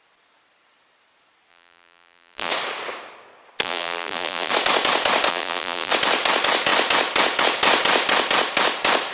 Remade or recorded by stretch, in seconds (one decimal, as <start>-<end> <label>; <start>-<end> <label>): 0.0-1.5 recorded; 1.5-2.5 remade; 2.5-3.6 recorded; 3.6-4.5 remade; 4.5-5.3 recorded; 5.3-5.9 remade; 5.9-9.1 recorded